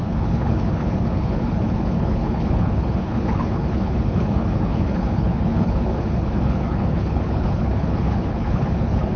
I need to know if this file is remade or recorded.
remade